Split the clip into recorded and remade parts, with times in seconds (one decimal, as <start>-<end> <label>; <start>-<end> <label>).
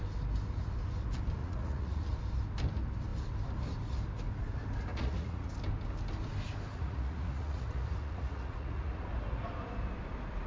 0.0-1.4 recorded; 1.4-2.0 remade; 2.0-4.9 recorded; 4.9-5.5 remade; 5.5-6.7 recorded; 6.7-9.1 remade; 9.1-10.5 recorded